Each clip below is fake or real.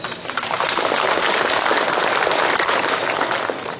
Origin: real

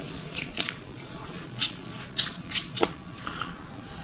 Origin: fake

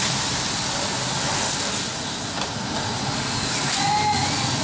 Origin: real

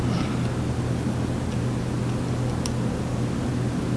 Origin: real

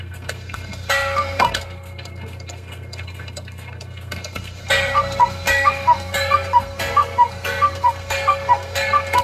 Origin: fake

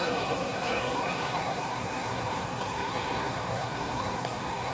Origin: fake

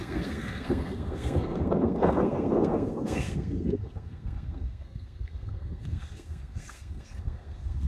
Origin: fake